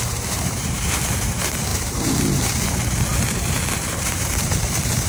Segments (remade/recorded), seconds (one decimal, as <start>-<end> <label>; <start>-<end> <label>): 0.0-3.1 remade; 3.1-4.0 recorded; 4.0-5.1 remade